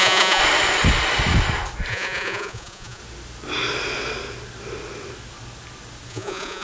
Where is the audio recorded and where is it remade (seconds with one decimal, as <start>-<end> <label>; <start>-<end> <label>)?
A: 0.0-0.4 remade; 0.4-1.9 recorded; 1.9-3.0 remade; 3.0-6.1 recorded; 6.1-6.6 remade